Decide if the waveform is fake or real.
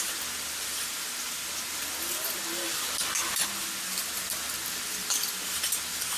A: real